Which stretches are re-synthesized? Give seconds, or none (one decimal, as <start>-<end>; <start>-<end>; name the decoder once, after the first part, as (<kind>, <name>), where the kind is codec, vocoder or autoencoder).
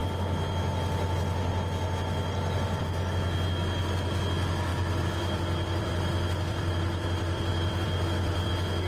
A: 4.7-8.5 (vocoder, BigVGAN v2)